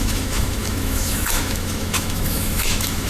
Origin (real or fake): fake